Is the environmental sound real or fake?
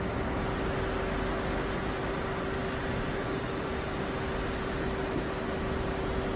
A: real